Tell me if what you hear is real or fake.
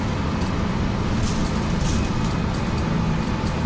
real